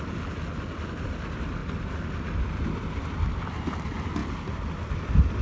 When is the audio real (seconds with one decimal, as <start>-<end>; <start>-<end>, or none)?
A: 0.0-1.6; 3.0-5.4